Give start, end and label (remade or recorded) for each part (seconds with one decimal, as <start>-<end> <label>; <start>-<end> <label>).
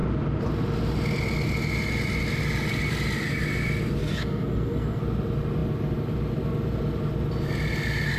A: 0.0-4.0 recorded; 4.0-5.0 remade; 5.0-8.2 recorded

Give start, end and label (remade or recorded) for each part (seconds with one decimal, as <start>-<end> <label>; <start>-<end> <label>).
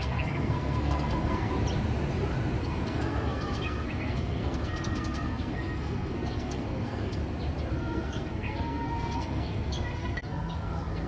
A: 0.0-1.5 remade; 1.5-2.6 recorded; 2.6-7.2 remade; 7.2-7.7 recorded; 7.7-11.1 remade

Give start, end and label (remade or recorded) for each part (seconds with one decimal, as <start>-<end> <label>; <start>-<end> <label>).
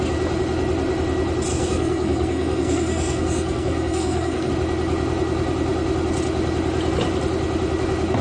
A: 0.0-1.5 recorded; 1.5-4.5 remade; 4.5-8.2 recorded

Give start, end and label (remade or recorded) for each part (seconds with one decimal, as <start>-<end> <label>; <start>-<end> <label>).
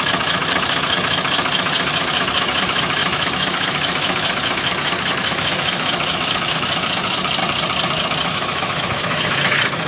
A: 0.0-7.4 remade; 7.4-8.3 recorded; 8.3-9.9 remade